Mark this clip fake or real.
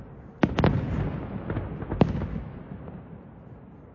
real